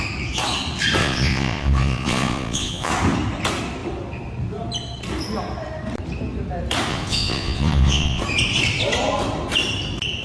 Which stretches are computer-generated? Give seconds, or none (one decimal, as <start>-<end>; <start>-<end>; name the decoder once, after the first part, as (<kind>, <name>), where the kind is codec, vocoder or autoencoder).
1.0-2.9 (vocoder, Vocos); 6.9-8.2